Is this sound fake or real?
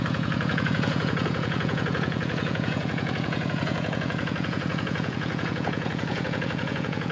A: fake